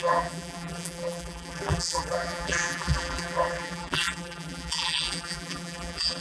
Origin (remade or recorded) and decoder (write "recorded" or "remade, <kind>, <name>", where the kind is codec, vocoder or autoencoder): remade, vocoder, BigVGAN v2